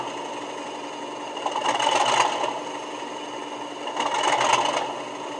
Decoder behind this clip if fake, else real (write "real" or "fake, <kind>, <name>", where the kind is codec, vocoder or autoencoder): real